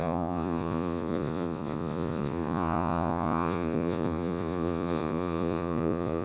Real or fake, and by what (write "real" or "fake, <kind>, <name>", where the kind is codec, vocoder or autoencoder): fake, vocoder, Vocos